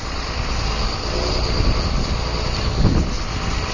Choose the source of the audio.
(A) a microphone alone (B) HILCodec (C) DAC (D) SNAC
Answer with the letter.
A